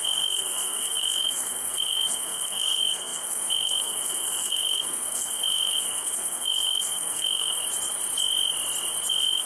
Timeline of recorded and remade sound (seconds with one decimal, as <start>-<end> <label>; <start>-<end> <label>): 0.0-7.6 remade; 7.6-9.1 recorded; 9.1-9.5 remade